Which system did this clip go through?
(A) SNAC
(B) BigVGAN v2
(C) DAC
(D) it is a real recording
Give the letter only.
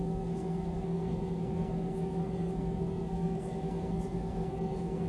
A